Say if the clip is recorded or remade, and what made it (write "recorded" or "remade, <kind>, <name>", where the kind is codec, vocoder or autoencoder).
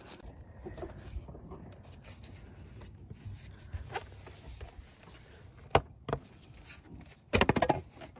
recorded